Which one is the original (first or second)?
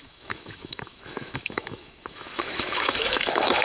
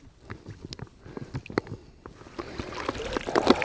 second